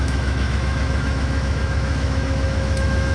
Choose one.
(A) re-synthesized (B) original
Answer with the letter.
A